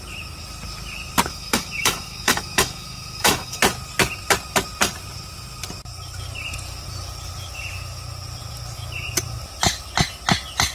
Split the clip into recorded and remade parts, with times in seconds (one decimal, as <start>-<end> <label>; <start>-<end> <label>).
0.0-1.3 recorded; 1.3-3.6 remade; 3.6-10.7 recorded